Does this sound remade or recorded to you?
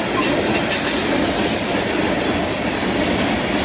recorded